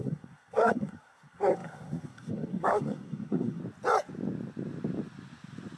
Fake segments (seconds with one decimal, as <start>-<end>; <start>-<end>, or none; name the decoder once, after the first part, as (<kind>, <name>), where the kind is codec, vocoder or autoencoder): 0.0-3.6 (codec, SNAC)